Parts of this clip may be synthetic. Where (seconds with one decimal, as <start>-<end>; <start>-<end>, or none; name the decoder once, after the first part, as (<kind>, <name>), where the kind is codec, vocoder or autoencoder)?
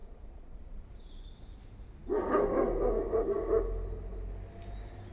0.0-1.1 (vocoder, Vocos)